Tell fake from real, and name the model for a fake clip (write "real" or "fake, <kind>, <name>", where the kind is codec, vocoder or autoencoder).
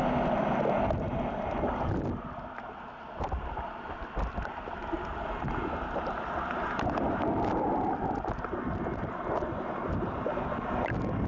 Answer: fake, vocoder, BigVGAN v2